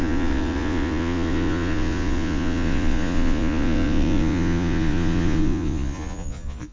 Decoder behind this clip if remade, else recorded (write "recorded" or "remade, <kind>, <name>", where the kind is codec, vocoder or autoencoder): remade, vocoder, Vocos